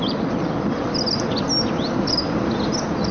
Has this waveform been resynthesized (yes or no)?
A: no